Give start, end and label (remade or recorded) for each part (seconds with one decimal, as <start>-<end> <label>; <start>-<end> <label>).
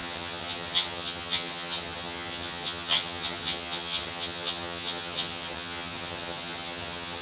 0.0-7.2 remade